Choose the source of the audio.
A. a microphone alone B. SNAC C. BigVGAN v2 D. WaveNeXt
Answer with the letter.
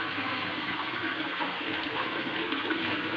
B